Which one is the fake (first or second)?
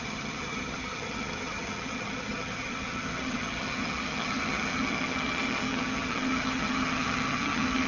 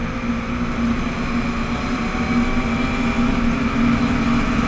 first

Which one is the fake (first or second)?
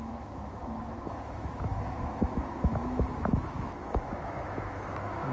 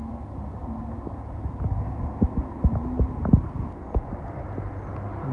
first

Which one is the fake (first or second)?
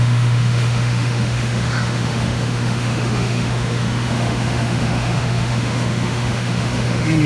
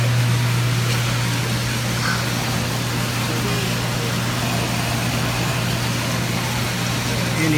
first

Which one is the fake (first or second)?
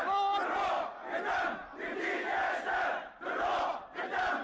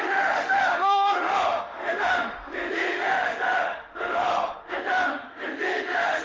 second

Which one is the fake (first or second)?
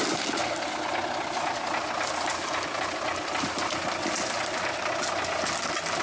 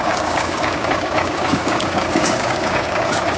second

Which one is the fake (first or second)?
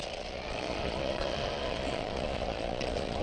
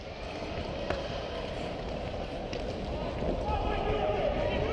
first